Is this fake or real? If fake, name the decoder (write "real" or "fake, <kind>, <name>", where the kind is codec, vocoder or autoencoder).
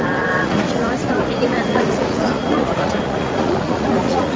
fake, vocoder, Vocos